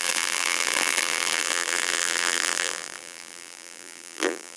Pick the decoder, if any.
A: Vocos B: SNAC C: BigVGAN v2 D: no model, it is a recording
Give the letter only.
C